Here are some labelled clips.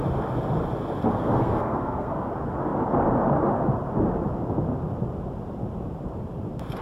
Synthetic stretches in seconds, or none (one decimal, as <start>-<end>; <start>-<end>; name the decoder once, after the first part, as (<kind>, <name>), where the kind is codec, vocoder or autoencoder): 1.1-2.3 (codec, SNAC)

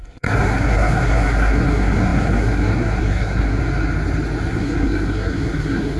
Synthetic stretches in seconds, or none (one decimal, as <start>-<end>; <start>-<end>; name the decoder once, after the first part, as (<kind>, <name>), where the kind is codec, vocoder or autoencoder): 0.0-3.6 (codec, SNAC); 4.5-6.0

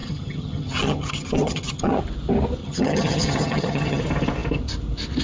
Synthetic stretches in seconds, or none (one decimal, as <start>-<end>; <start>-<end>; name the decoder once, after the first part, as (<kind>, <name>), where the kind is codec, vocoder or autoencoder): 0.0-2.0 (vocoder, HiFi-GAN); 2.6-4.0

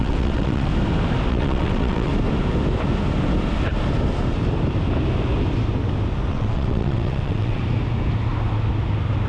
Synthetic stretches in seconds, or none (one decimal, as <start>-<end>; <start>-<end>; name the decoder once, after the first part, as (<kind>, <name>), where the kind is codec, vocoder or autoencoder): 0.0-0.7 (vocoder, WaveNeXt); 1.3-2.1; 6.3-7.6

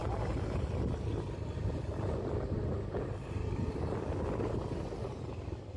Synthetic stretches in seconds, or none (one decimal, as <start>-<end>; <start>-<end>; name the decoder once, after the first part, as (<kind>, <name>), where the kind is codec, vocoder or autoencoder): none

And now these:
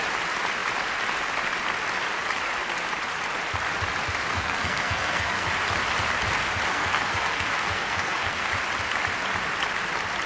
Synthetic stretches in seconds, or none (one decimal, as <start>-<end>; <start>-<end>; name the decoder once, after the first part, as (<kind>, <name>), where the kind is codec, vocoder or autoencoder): 4.3-5.5 (codec, SNAC); 6.7-8.5

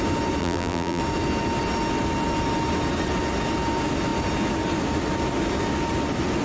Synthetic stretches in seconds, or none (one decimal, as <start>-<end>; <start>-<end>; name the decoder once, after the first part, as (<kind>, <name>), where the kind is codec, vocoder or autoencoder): 0.4-1.0 (vocoder, BigVGAN v2)

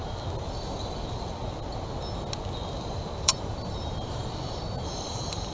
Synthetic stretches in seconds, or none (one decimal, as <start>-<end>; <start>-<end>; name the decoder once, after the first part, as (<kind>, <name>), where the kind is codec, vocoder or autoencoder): 3.2-4.2 (vocoder, BigVGAN v2); 5.1-5.5